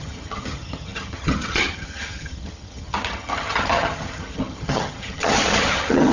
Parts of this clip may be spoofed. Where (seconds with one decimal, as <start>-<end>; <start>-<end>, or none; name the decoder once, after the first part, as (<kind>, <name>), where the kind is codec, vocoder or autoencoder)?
0.0-6.1 (vocoder, HiFi-GAN)